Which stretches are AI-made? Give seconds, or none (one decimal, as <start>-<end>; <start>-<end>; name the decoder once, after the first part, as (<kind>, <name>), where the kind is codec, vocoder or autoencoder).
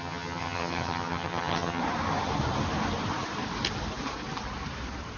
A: 0.0-1.8 (vocoder, HiFi-GAN)